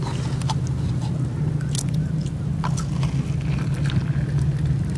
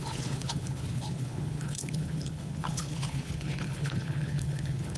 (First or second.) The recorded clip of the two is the first